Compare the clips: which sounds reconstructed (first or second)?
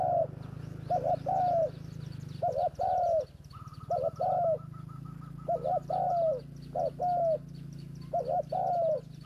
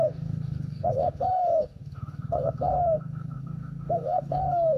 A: second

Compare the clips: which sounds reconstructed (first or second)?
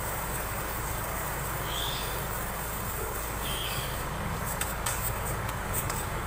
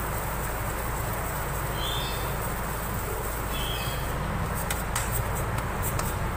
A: first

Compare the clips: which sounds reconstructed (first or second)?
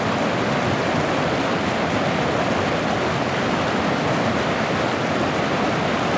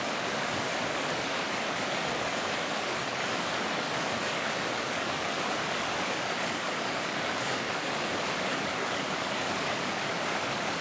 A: second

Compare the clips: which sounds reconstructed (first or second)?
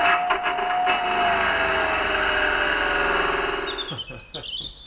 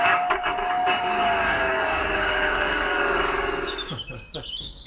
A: second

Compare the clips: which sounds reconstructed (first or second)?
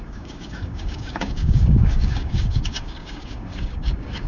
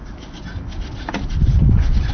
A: first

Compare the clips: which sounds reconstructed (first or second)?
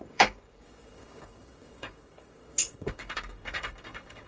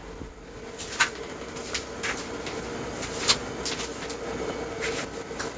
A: first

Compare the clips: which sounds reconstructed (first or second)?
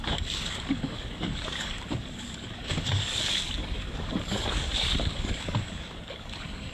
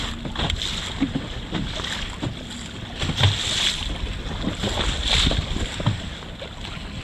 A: first